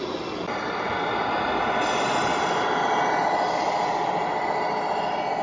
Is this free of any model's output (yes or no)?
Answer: yes